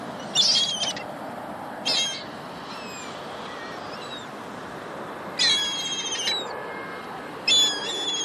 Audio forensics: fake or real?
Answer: real